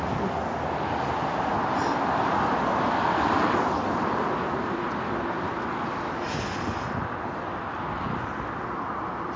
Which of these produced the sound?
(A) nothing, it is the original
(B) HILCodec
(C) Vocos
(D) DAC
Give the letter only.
A